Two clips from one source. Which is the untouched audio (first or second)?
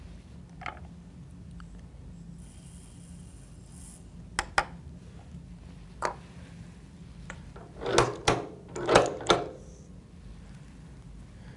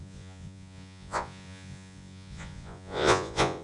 first